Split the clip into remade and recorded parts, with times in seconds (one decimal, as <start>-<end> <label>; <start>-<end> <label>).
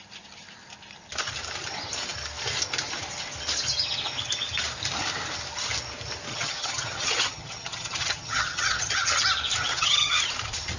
0.0-6.3 recorded; 6.3-9.2 remade; 9.2-9.7 recorded; 9.7-10.2 remade; 10.2-10.8 recorded